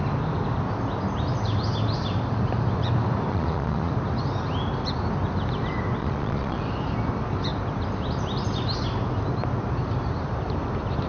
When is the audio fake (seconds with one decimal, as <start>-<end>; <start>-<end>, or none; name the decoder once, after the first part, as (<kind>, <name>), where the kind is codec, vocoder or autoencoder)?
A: 3.3-3.9 (vocoder, Vocos); 6.0-6.6